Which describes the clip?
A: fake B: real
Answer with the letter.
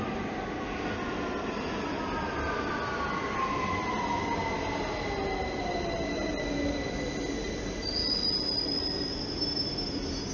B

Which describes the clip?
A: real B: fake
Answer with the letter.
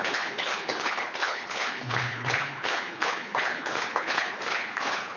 B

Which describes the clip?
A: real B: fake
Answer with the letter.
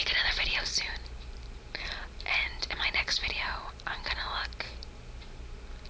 A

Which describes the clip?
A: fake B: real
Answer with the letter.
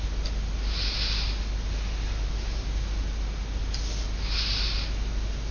B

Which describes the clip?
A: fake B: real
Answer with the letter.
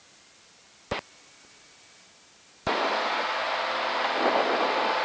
B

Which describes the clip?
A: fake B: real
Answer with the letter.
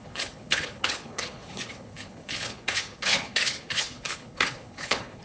A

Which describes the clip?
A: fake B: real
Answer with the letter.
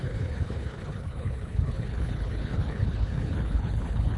A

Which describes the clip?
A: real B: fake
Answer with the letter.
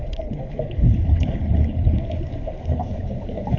B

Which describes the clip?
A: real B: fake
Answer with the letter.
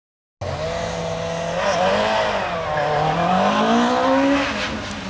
A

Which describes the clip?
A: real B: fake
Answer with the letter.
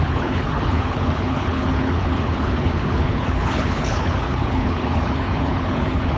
B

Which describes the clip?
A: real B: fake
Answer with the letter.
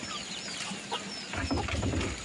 A